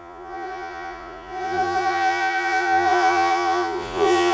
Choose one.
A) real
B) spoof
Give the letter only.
B